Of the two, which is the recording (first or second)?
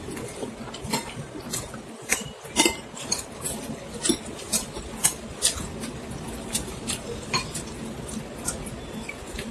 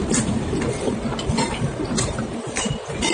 first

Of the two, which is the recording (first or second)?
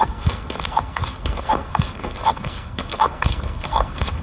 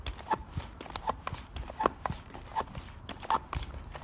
second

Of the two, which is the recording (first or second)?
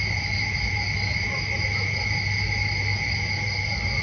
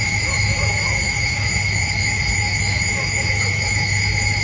first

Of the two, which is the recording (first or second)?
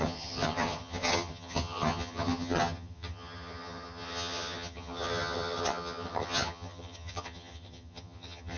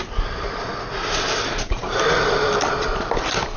second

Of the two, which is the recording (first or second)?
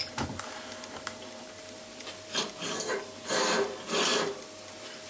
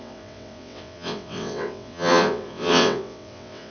first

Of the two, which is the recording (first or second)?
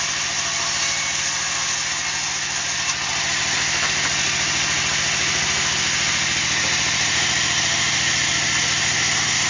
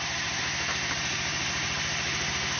first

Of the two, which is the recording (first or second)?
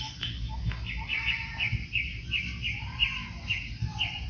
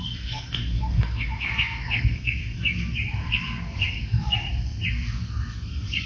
first